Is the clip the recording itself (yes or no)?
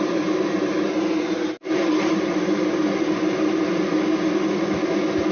yes